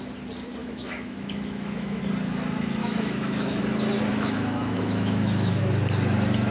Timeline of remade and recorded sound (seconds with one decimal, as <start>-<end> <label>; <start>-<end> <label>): 0.0-0.6 recorded; 0.6-2.0 remade; 2.0-2.8 recorded; 2.8-3.6 remade; 3.6-4.1 recorded; 4.1-5.6 remade; 5.6-6.5 recorded